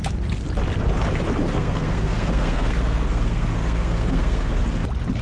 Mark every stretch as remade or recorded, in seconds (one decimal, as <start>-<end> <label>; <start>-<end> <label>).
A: 0.0-1.4 recorded; 1.4-4.5 remade; 4.5-5.2 recorded